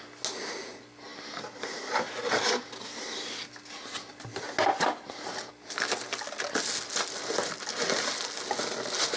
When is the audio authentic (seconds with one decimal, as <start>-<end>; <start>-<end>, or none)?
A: 0.0-9.2